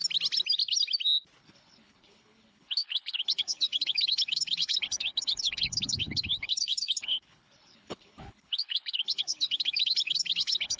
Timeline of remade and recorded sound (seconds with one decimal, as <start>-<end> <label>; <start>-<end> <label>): 0.0-1.4 recorded; 1.4-10.8 remade